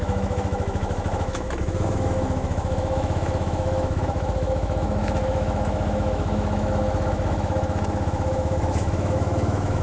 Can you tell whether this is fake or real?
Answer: fake